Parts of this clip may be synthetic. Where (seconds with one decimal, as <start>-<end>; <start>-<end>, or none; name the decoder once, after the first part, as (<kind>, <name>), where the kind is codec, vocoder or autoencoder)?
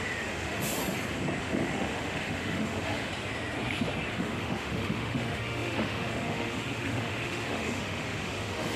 0.0-0.8 (autoencoder, DAC-VAE); 1.4-3.1; 4.1-8.8